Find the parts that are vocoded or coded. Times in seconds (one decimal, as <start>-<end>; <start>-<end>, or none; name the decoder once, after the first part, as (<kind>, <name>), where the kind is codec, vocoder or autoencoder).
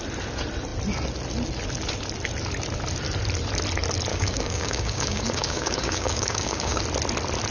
4.1-6.8 (codec, DAC)